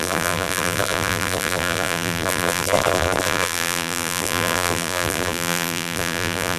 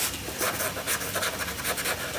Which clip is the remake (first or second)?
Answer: first